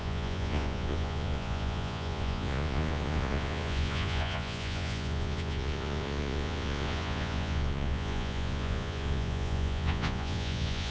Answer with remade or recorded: remade